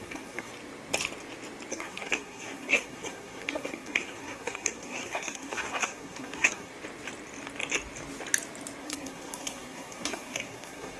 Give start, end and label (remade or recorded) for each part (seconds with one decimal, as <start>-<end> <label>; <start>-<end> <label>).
0.0-0.5 remade; 0.5-1.7 recorded; 1.7-6.7 remade; 6.7-8.8 recorded; 8.8-11.0 remade